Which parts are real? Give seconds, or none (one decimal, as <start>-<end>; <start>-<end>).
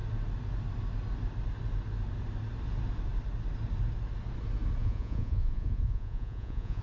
0.0-4.8